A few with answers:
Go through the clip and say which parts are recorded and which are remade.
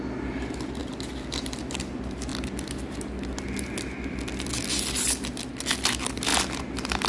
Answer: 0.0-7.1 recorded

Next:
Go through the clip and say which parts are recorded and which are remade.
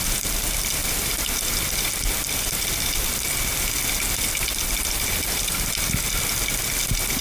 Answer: 0.0-7.2 recorded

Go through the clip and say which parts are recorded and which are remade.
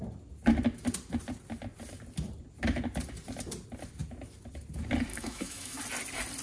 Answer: 0.0-5.1 recorded; 5.1-5.8 remade; 5.8-6.4 recorded